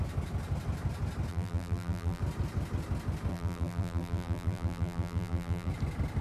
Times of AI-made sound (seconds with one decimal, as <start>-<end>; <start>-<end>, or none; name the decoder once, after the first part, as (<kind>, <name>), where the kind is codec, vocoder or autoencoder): 1.3-2.2 (vocoder, BigVGAN v2); 3.3-5.7